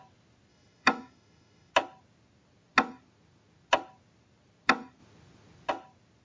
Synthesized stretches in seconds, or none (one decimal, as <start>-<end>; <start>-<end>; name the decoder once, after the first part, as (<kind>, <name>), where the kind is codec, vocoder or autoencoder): 0.5-1.7 (autoencoder, DAC-VAE)